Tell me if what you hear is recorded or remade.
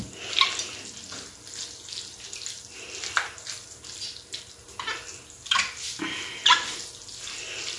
recorded